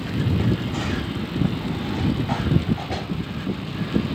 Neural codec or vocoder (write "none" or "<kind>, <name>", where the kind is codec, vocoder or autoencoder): none